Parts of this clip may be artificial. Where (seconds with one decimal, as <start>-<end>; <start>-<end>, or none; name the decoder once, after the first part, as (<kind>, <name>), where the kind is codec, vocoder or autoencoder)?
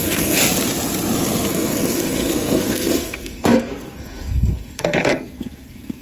0.0-0.4 (codec, SNAC); 1.5-6.0